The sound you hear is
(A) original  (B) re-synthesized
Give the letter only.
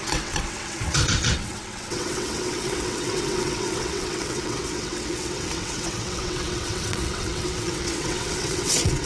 B